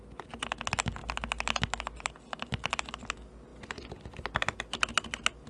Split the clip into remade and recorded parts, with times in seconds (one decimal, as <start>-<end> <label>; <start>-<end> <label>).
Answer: 0.0-5.5 recorded